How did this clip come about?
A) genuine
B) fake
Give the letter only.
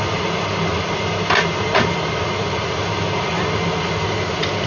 A